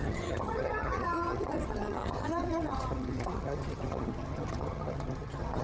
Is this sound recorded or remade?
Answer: remade